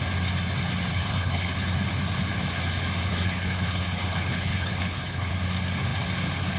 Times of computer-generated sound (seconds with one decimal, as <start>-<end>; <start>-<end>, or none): 0.9-1.7; 3.1-5.3